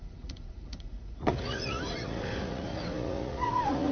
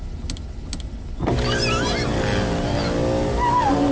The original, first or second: second